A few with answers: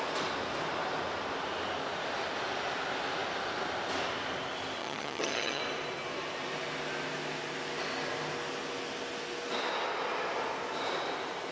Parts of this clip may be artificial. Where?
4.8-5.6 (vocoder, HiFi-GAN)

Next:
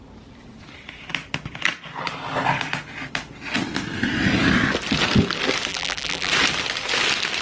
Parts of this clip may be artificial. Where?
5.7-6.3 (vocoder, BigVGAN v2)

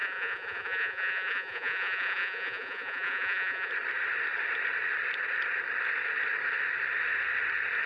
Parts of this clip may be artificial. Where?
0.0-3.7 (vocoder, Vocos)

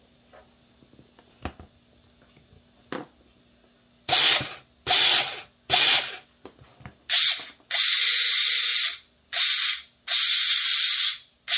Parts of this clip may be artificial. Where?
none

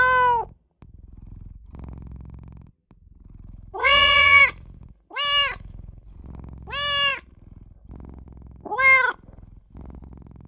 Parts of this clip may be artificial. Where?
3.8-4.4 (vocoder, Vocos)

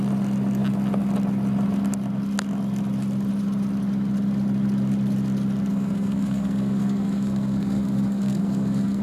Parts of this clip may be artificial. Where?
5.7-9.0 (codec, SNAC)

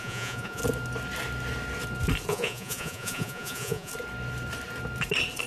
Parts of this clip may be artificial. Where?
0.0-0.6 (vocoder, Vocos); 2.3-3.9